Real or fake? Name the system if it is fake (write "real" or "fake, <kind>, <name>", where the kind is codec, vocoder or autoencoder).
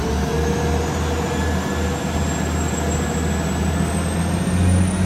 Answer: real